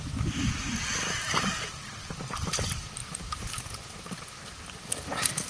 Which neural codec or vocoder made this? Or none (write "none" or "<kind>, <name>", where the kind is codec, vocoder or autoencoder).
none